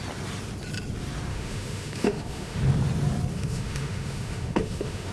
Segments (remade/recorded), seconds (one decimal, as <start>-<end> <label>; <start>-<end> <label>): 0.0-1.3 recorded; 1.3-2.6 remade; 2.6-3.3 recorded; 3.3-5.1 remade